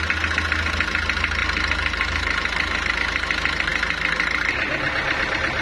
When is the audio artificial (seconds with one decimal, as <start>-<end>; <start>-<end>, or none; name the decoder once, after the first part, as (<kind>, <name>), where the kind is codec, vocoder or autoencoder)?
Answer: none